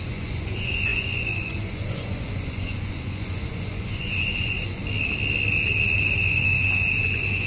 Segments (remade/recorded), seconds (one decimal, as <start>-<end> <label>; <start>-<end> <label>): 0.0-4.8 remade; 4.8-6.0 recorded; 6.0-7.5 remade